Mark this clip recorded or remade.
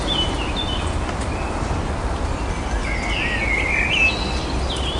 recorded